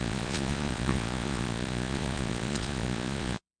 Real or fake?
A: fake